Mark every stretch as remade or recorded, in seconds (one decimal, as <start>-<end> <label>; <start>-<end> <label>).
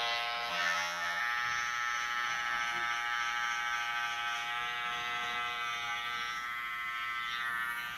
0.0-0.5 recorded; 0.5-1.2 remade; 1.2-8.0 recorded